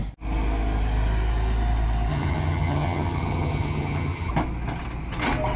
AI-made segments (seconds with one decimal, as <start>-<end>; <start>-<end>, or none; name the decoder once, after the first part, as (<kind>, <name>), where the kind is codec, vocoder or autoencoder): 2.1-4.3 (vocoder, HiFi-GAN)